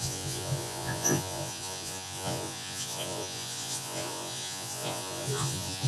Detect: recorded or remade remade